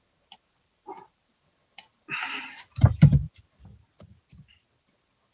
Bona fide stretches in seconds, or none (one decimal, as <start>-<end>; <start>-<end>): 1.3-2.4; 3.1-5.3